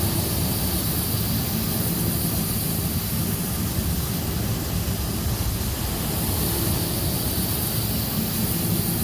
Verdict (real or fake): real